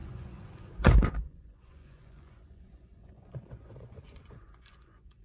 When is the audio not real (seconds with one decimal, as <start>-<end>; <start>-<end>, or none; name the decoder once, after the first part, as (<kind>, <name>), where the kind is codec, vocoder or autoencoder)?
0.0-5.2 (vocoder, Vocos)